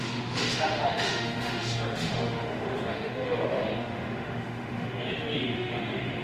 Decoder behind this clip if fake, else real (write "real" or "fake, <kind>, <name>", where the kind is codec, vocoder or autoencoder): fake, autoencoder, DAC-VAE